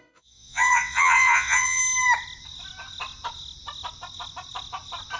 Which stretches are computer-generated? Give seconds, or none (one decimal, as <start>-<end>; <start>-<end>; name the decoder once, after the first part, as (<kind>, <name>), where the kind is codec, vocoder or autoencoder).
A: 0.0-1.8 (vocoder, WaveNeXt)